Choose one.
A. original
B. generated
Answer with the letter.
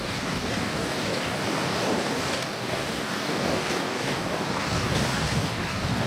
B